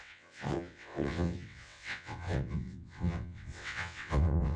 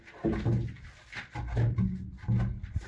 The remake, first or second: first